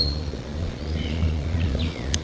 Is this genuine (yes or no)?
no